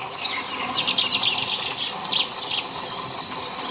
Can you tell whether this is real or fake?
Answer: real